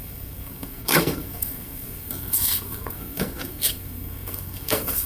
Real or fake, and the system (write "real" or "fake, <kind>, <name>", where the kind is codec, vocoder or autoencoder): fake, codec, SNAC